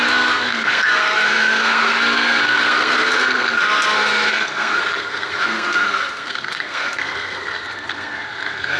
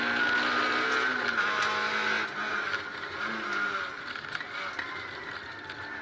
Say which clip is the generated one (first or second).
first